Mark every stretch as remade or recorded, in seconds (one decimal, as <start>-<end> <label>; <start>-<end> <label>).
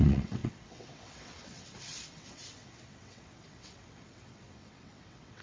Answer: 0.0-5.4 remade